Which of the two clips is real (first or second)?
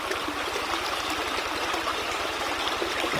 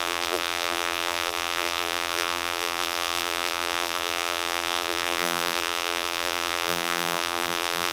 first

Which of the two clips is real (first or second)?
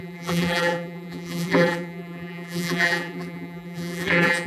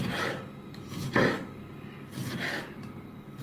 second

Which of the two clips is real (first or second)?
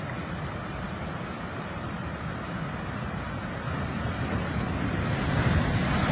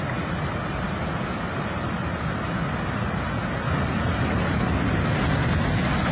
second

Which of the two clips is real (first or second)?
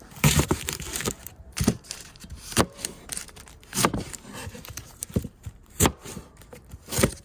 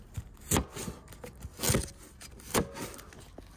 second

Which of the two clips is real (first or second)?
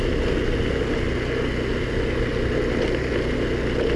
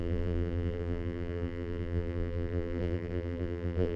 first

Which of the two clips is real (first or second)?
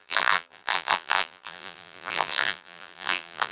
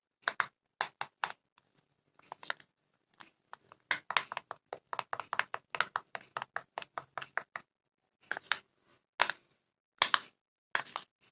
second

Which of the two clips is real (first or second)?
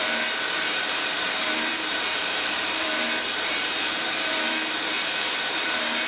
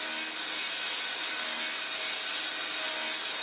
second